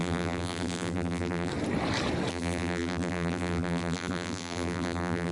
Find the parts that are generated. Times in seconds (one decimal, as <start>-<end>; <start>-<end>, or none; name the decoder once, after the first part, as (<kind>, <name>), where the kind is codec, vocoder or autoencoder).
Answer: 0.0-1.5 (vocoder, BigVGAN v2); 2.3-5.3